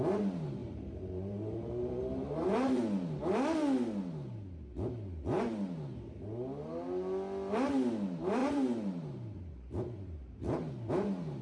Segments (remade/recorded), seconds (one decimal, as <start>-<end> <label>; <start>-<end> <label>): 0.0-0.6 recorded; 0.6-2.8 remade; 2.8-8.4 recorded; 8.4-10.7 remade; 10.7-11.4 recorded